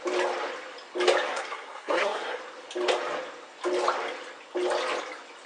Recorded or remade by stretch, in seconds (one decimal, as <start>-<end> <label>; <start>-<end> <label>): 0.0-1.3 recorded; 1.3-2.4 remade; 2.4-5.5 recorded